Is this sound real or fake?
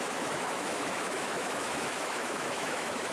fake